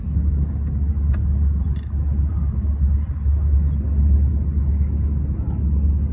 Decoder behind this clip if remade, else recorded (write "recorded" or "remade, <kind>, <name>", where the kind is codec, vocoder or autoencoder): recorded